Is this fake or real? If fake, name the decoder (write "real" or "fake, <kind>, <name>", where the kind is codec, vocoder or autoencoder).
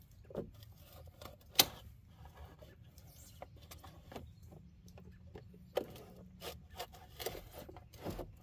real